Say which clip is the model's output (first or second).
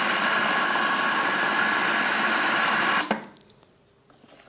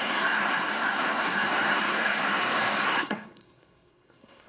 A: second